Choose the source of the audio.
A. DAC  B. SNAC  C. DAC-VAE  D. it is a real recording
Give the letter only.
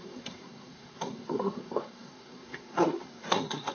B